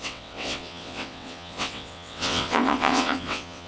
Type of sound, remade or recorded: remade